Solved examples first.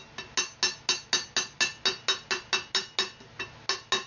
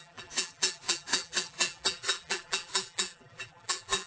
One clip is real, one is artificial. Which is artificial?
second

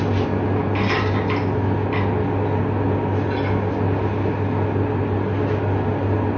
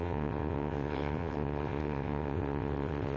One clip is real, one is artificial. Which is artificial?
second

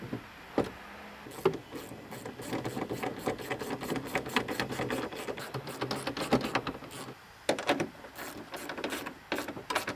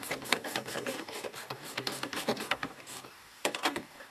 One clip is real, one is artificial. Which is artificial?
second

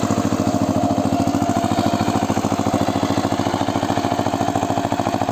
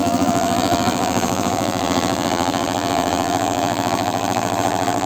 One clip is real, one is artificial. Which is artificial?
second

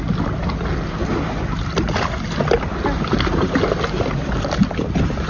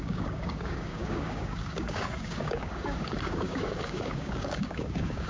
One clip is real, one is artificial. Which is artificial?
second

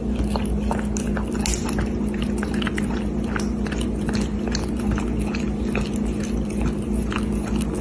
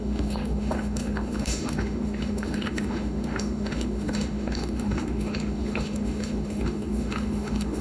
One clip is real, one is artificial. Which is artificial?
second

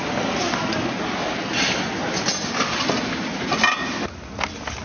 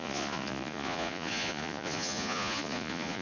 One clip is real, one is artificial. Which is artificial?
second